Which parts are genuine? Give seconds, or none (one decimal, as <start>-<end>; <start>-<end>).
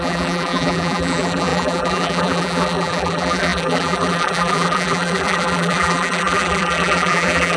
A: none